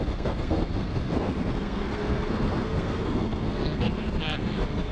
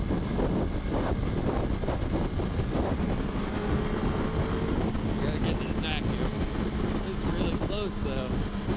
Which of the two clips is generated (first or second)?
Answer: first